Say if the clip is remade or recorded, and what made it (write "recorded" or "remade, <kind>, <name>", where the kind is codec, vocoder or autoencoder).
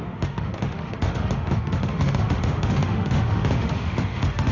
remade, autoencoder, DAC-VAE